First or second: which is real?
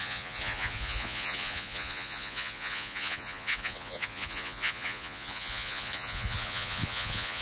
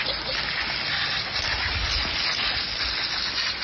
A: second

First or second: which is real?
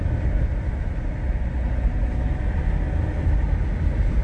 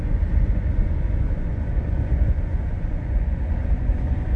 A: first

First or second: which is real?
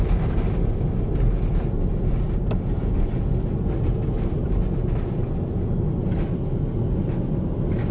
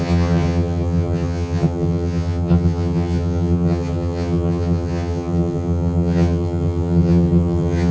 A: first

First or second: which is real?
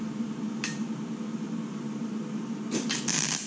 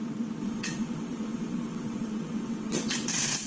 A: first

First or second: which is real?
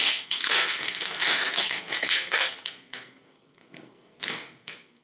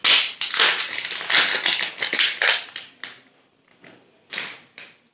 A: second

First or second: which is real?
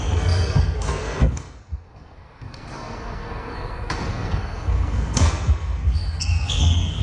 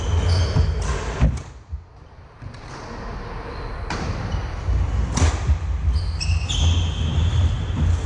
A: second